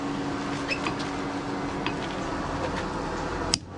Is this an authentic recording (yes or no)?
yes